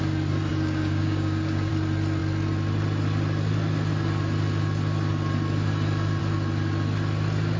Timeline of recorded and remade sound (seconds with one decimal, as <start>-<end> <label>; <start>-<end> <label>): 0.0-0.5 recorded; 0.5-1.7 remade; 1.7-7.6 recorded